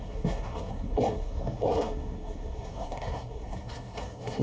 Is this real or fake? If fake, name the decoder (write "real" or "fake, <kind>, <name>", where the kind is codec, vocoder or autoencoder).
fake, codec, SNAC